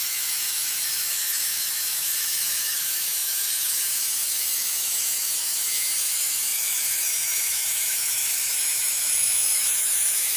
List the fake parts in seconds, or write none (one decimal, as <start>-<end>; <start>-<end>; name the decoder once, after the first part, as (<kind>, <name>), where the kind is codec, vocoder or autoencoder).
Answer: 0.0-10.4 (autoencoder, DAC-VAE)